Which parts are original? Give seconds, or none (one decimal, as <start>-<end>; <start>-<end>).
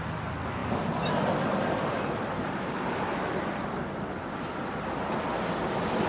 0.0-6.1